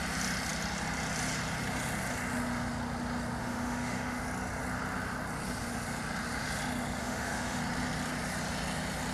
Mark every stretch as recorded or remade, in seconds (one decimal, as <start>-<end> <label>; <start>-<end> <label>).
0.0-3.4 recorded; 3.4-4.2 remade; 4.2-7.0 recorded; 7.0-7.6 remade; 7.6-9.1 recorded